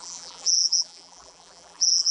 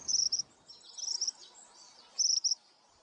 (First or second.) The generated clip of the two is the first